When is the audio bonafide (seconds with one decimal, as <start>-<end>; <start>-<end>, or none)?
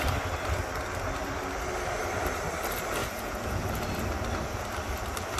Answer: 0.0-3.0; 3.8-5.4